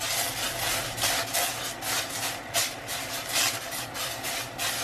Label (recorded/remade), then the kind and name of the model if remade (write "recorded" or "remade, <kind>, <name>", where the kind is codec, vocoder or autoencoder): recorded